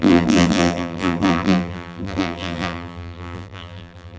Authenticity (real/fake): fake